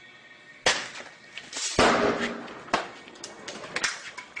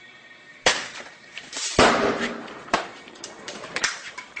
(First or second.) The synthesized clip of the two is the second